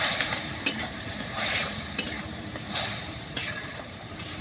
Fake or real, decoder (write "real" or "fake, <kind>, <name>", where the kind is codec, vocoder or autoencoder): fake, vocoder, BigVGAN v2